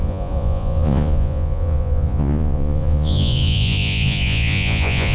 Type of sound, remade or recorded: remade